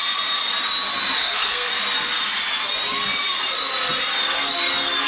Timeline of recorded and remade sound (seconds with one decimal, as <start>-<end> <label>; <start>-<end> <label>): 0.0-1.2 recorded; 1.2-1.7 remade; 1.7-5.1 recorded